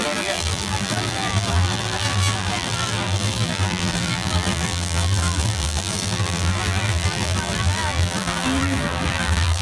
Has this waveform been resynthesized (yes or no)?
yes